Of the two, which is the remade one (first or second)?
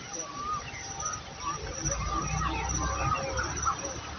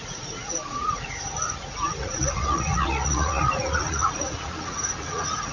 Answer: second